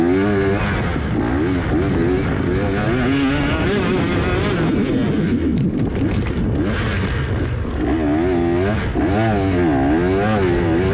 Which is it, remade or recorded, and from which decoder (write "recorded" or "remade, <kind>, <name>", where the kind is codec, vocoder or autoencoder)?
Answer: recorded